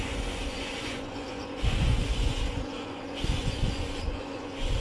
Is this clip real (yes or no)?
no